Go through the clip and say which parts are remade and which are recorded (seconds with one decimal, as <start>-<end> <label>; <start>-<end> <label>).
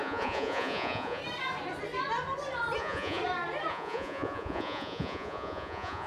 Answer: 0.0-1.2 remade; 1.2-2.8 recorded; 2.8-3.2 remade; 3.2-3.7 recorded; 3.7-6.1 remade